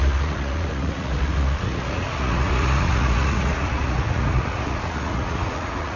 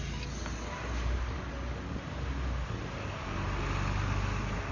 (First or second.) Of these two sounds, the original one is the second